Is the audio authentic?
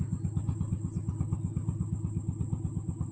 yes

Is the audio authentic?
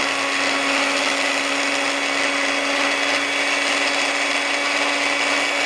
yes